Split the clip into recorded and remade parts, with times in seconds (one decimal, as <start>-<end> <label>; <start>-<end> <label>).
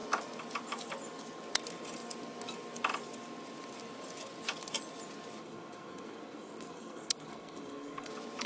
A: 0.0-5.4 recorded; 5.4-8.1 remade; 8.1-8.5 recorded